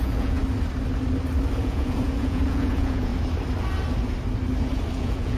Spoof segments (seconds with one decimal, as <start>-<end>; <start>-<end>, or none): 0.0-0.4; 1.6-3.1; 4.9-5.4